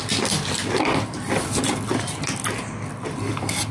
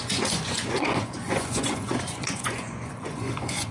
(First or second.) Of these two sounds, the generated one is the second